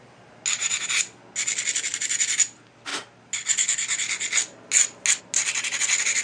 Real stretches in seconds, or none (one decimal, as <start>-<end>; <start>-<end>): 0.0-6.2

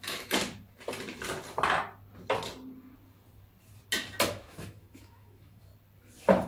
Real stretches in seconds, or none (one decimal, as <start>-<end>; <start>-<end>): 0.4-4.3; 5.7-6.5

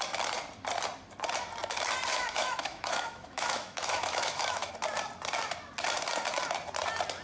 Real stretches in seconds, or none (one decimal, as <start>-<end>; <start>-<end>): 0.0-2.1; 4.7-7.2

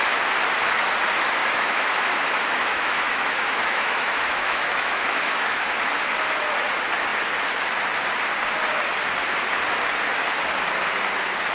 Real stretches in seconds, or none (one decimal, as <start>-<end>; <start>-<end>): 0.0-1.4; 5.7-11.5

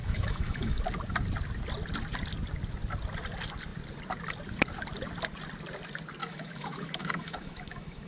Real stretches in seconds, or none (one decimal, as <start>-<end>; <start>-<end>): 0.8-6.2